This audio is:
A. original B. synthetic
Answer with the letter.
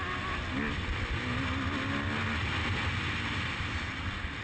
A